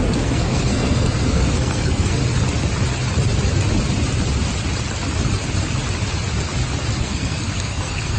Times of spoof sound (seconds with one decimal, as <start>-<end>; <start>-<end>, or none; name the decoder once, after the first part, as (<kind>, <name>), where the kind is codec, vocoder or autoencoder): 0.0-2.2 (codec, SNAC); 7.0-8.2

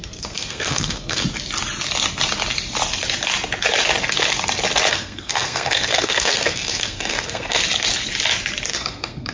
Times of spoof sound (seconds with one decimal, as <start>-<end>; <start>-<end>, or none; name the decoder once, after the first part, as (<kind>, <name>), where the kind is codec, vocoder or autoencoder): 0.0-1.2 (codec, SNAC); 4.9-7.6; 8.7-9.3

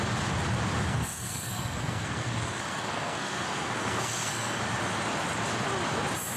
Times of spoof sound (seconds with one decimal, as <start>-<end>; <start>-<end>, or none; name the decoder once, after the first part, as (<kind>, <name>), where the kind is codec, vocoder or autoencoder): 0.8-4.6 (codec, SNAC)